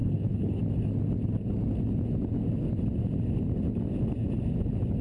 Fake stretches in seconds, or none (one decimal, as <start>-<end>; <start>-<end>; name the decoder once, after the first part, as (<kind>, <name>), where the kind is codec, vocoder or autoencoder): 0.0-0.6 (codec, HILCodec)